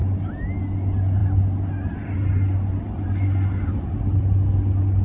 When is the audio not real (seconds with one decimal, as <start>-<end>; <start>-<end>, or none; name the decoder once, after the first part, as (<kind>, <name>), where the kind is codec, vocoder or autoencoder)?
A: none